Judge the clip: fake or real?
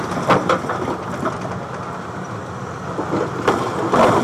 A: real